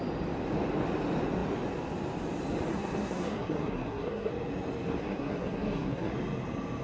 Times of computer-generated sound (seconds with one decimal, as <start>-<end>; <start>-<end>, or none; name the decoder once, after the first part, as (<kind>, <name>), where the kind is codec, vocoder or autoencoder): 2.7-4.3 (codec, SNAC); 5.0-6.1